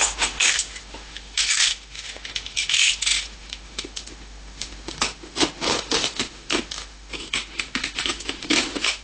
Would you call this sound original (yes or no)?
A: no